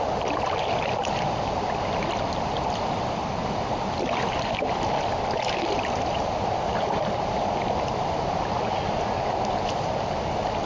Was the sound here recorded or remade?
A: recorded